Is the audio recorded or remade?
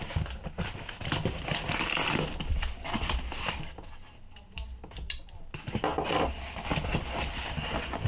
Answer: recorded